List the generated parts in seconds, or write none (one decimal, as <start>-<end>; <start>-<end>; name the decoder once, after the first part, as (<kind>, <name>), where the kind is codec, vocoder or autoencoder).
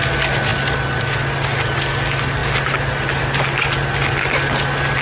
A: 0.5-1.0 (vocoder, BigVGAN v2)